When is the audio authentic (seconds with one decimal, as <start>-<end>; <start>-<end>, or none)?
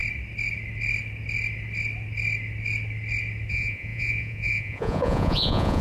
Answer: 0.0-3.5